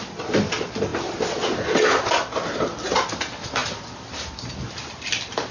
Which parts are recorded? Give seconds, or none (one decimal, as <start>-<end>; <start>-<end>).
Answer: 0.0-5.5